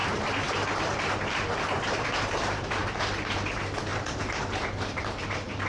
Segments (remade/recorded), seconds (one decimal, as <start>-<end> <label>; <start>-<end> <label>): 0.0-2.8 remade; 2.8-3.3 recorded; 3.3-3.9 remade; 3.9-5.0 recorded; 5.0-5.7 remade